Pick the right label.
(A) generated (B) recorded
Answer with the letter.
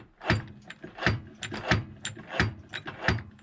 B